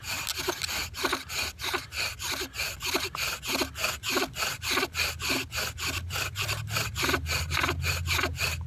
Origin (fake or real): real